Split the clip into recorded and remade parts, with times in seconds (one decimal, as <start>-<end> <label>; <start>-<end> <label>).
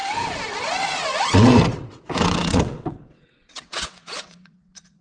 0.0-1.2 recorded; 1.2-5.0 remade